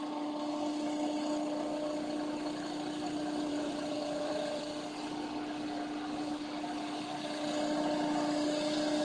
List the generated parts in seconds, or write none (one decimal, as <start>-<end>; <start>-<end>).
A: 3.5-4.6